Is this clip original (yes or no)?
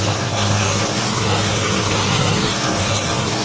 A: no